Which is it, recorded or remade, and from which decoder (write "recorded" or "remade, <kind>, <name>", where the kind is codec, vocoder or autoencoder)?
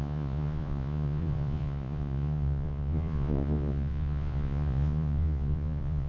remade, vocoder, Vocos